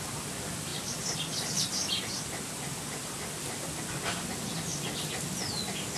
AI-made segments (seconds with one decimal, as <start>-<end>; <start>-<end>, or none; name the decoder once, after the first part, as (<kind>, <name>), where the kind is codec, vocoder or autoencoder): none